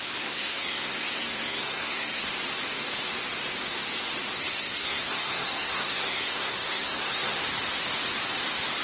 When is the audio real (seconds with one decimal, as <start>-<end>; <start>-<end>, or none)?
2.3-4.4; 7.4-8.8